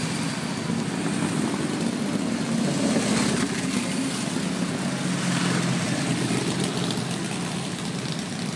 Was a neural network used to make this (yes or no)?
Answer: no